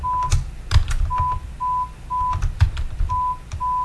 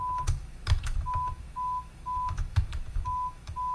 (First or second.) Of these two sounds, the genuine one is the first